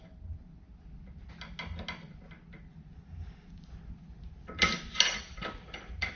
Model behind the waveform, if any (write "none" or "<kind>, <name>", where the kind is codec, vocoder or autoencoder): none